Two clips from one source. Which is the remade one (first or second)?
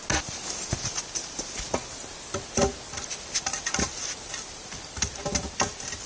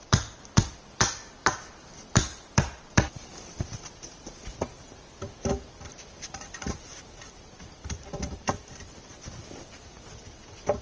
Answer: second